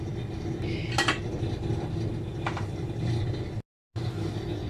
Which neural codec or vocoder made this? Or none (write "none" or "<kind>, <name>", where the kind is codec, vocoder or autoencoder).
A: none